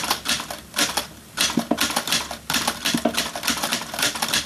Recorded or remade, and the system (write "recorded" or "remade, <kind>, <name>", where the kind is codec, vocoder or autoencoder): remade, vocoder, BigVGAN v2